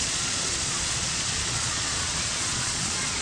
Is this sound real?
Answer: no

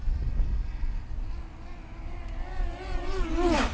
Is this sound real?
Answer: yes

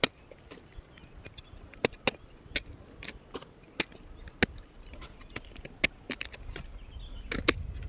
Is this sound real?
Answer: yes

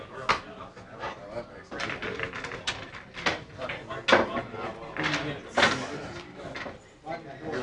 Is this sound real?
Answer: yes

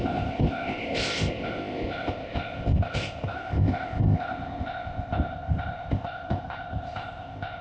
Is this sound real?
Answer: no